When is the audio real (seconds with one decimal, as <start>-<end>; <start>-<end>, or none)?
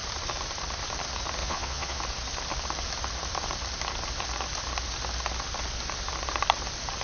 0.0-1.4; 2.0-7.0